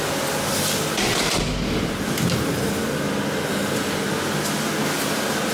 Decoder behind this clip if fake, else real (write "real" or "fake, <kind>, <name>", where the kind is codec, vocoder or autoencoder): real